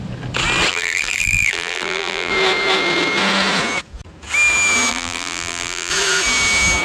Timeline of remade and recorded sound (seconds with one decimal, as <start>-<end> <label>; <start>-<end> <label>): 0.0-0.7 recorded; 0.7-2.3 remade; 2.3-4.9 recorded; 4.9-5.9 remade; 5.9-6.8 recorded